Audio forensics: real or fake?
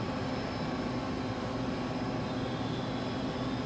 real